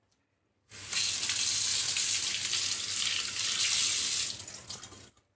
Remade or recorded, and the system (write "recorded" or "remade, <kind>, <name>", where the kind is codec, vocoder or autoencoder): recorded